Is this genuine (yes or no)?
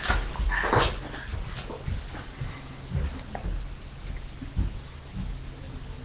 yes